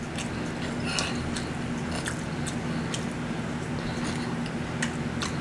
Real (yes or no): yes